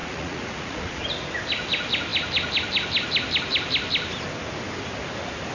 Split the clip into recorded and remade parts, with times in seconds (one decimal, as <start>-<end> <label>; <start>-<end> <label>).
0.0-1.0 remade; 1.0-5.5 recorded